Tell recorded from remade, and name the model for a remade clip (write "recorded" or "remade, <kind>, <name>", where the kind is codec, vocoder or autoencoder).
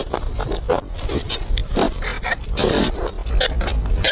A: recorded